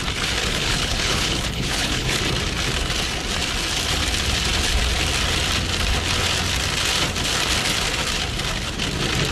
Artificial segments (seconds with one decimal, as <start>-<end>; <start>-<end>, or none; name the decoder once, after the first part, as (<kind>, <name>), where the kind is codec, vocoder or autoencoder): 0.4-2.2 (codec, HILCodec)